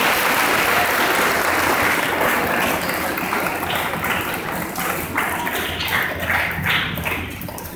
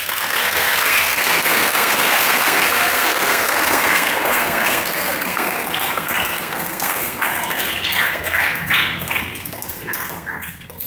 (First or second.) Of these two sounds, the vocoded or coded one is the second